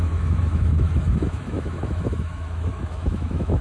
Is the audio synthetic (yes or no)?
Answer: yes